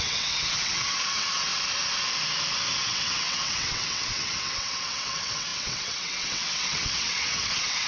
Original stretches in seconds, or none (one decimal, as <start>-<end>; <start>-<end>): 1.5-2.7